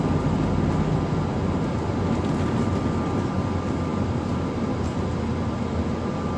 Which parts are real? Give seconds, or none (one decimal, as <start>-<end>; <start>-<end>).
0.0-6.4